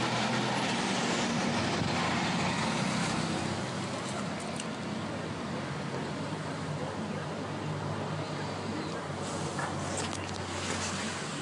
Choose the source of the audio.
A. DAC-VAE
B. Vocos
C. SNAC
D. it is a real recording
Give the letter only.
D